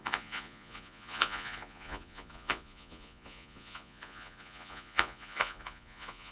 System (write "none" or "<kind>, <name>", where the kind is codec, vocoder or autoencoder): vocoder, Vocos